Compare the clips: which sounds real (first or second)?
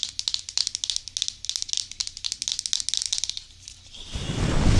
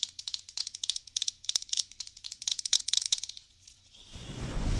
first